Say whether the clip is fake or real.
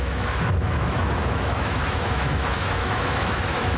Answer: fake